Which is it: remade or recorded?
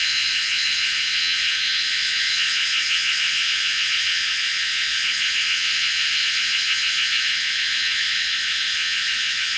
remade